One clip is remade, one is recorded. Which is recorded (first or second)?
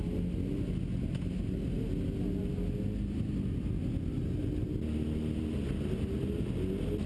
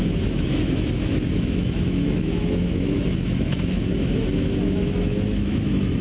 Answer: first